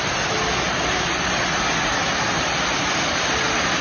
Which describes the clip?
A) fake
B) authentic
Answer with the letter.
B